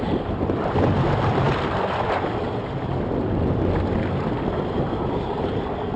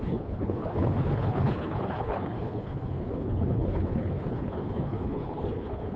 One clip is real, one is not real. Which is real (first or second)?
first